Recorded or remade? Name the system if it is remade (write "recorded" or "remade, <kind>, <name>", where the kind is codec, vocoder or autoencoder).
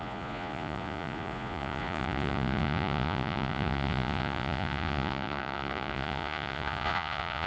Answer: remade, vocoder, Vocos